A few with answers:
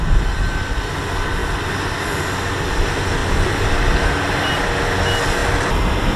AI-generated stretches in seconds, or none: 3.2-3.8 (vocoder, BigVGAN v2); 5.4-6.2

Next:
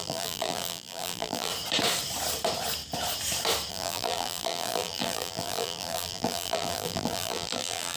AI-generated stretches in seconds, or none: 0.0-1.5 (vocoder, BigVGAN v2); 3.7-8.0

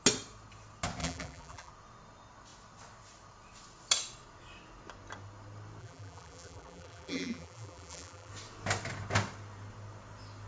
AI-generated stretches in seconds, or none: 1.0-1.7 (vocoder, BigVGAN v2); 5.8-8.3

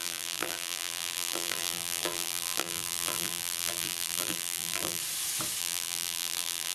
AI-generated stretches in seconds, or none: 0.0-5.0 (vocoder, BigVGAN v2); 5.6-6.7

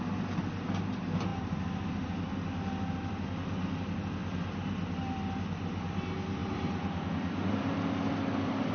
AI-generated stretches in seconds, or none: 1.3-2.3 (vocoder, BigVGAN v2); 6.4-7.1

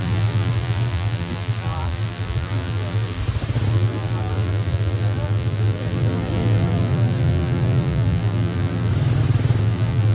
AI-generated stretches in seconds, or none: 0.0-3.2 (vocoder, BigVGAN v2); 3.7-8.9; 9.6-10.1

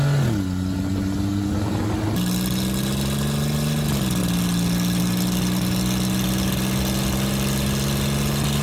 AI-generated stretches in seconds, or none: none

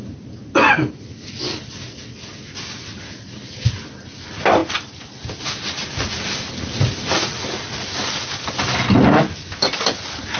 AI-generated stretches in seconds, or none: none